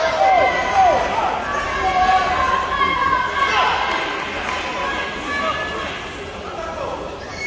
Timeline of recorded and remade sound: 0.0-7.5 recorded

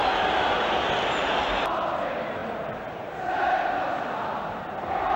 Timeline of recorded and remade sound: 0.0-5.2 recorded